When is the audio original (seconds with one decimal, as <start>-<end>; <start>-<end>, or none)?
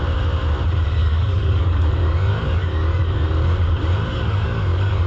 0.0-1.0; 3.0-4.1